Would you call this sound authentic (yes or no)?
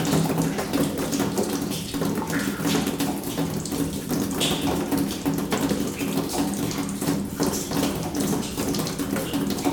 yes